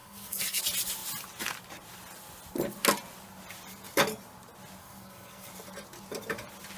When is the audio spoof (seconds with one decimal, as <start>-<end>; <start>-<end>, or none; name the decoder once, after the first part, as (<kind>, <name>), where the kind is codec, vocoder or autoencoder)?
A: 0.0-0.6 (codec, SNAC); 4.8-5.5